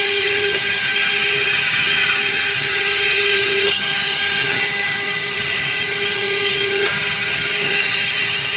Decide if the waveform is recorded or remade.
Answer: remade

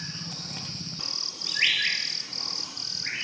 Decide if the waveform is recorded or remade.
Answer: recorded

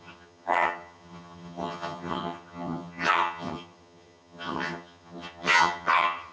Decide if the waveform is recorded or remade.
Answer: remade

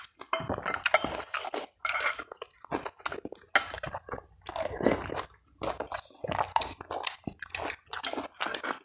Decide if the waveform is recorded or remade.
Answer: recorded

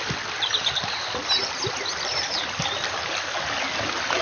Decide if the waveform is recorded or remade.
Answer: recorded